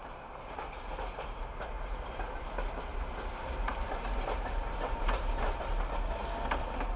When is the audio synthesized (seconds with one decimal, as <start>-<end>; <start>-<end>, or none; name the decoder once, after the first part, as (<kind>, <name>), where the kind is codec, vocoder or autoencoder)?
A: 0.0-2.5 (vocoder, BigVGAN v2); 2.9-5.7

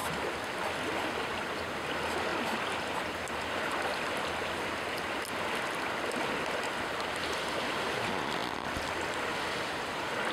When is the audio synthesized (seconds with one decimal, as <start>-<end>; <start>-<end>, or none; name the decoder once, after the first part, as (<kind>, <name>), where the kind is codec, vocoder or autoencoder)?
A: none

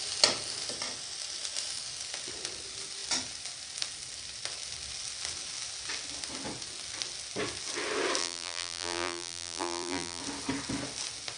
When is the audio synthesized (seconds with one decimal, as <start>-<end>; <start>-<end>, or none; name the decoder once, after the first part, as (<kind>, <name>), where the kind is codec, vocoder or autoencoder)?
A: 8.2-10.2 (vocoder, BigVGAN v2)

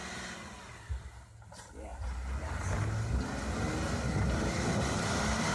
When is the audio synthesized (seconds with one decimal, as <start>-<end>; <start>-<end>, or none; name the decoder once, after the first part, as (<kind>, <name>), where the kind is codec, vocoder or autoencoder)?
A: none

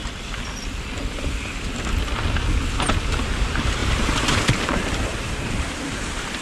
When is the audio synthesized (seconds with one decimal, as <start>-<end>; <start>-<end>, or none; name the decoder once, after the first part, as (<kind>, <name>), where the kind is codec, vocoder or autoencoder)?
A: 3.8-4.4 (vocoder, BigVGAN v2); 5.1-6.4

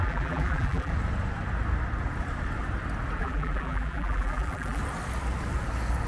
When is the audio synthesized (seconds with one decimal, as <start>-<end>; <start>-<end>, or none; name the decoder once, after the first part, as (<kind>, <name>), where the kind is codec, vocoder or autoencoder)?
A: 0.0-0.9 (vocoder, BigVGAN v2); 3.2-4.8